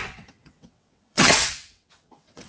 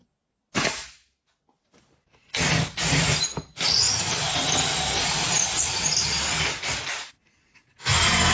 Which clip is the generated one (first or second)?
first